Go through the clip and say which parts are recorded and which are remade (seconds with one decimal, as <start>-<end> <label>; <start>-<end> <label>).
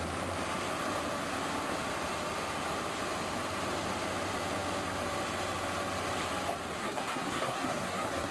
0.0-6.8 recorded; 6.8-8.3 remade